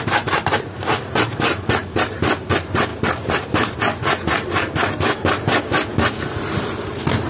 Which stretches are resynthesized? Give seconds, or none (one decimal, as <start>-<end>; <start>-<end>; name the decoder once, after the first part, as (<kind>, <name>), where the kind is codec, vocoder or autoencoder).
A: 0.0-2.9 (vocoder, BigVGAN v2)